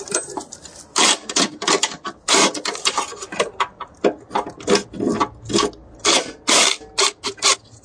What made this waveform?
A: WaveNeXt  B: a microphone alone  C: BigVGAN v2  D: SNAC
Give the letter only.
B